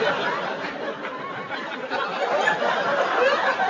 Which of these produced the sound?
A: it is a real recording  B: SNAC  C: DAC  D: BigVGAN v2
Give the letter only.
A